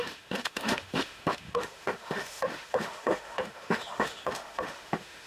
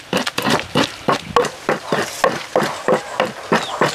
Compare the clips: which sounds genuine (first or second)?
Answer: second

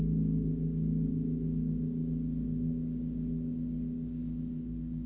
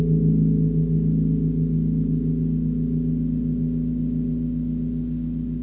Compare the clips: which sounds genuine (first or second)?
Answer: second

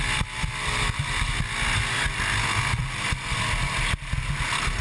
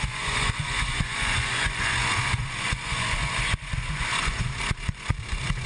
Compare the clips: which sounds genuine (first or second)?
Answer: first